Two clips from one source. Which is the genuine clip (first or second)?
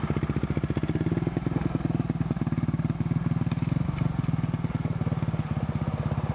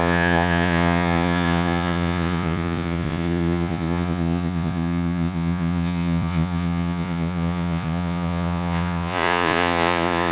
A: first